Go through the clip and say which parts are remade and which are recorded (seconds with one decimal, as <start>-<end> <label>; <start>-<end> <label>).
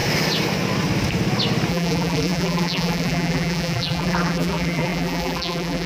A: 0.0-1.7 recorded; 1.7-5.9 remade